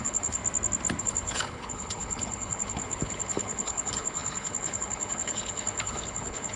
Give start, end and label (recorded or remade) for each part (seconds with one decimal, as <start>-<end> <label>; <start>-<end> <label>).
0.0-0.4 remade; 0.4-1.0 recorded; 1.0-6.6 remade